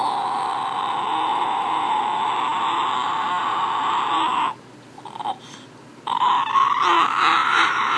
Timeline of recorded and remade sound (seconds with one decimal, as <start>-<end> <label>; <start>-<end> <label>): 0.0-1.3 recorded; 1.3-2.0 remade; 2.0-7.4 recorded; 7.4-8.0 remade